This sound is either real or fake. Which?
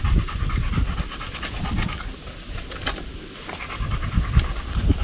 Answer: real